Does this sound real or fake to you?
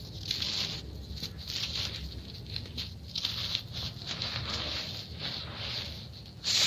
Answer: real